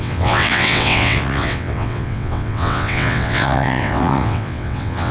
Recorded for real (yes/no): no